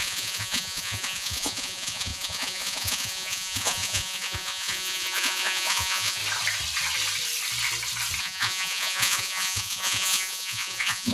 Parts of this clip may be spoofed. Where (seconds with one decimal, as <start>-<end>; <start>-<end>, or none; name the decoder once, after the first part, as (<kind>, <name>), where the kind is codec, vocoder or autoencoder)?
0.0-6.2 (vocoder, Vocos); 8.2-11.1